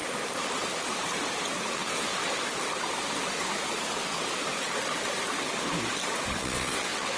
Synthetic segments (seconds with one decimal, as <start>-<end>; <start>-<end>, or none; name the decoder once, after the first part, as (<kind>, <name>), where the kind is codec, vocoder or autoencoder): 1.7-2.1 (vocoder, WaveNeXt); 6.4-7.2